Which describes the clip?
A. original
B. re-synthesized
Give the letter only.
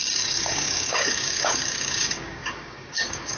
B